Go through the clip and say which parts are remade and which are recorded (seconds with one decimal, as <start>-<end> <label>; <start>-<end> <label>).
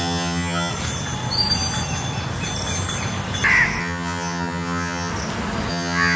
0.0-0.7 remade; 0.7-3.8 recorded; 3.8-5.1 remade; 5.1-5.7 recorded; 5.7-6.2 remade